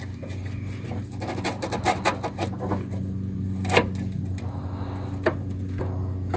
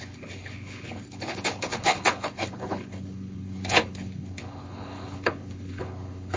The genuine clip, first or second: first